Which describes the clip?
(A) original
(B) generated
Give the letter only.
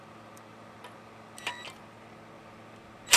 A